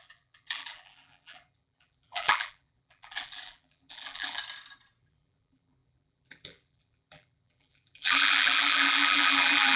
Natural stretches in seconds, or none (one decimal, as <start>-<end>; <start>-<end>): 4.4-5.0